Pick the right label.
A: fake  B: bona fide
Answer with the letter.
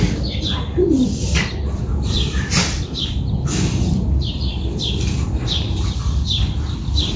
A